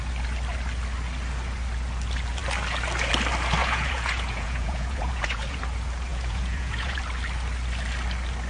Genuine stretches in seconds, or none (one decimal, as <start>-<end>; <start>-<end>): 0.0-3.6; 5.6-6.1; 7.0-8.5